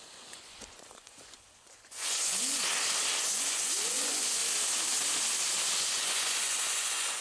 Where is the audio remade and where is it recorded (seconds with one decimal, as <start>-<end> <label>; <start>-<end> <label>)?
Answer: 0.0-2.6 remade; 2.6-3.2 recorded; 3.2-4.4 remade; 4.4-5.8 recorded; 5.8-7.2 remade